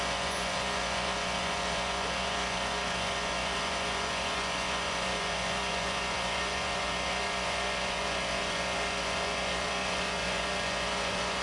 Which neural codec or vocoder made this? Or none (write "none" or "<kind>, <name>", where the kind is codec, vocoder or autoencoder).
vocoder, Vocos